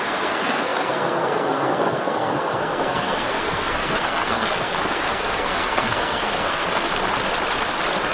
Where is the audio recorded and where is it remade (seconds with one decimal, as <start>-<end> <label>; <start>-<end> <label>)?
0.0-6.9 remade; 6.9-8.1 recorded